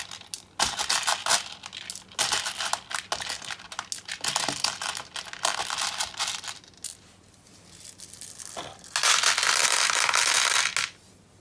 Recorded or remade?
recorded